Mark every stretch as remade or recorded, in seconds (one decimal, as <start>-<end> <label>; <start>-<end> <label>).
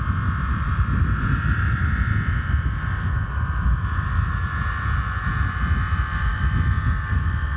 0.0-7.6 recorded